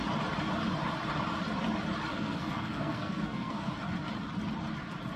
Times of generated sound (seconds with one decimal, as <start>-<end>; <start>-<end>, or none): 2.1-3.7